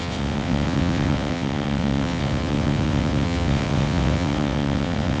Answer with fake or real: fake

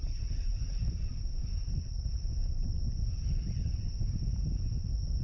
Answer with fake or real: real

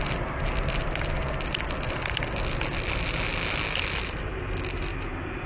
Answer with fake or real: real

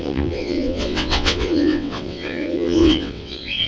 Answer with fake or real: fake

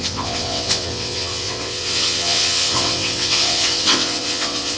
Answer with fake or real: fake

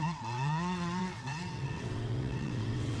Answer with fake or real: fake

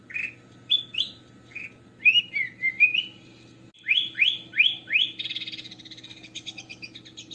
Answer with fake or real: real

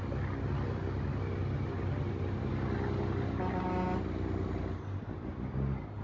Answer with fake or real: real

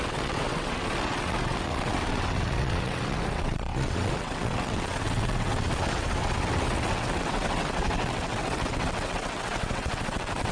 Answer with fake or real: fake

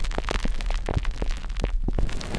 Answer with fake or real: real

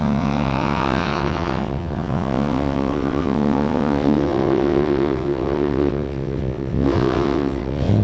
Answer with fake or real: fake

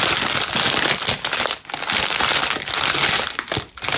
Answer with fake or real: real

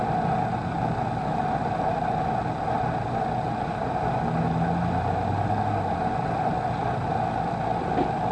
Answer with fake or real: real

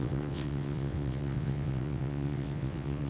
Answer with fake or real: fake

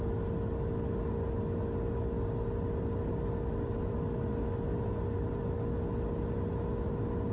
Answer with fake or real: real